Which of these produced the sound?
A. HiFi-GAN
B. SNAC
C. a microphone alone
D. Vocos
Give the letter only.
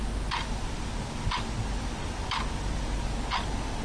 C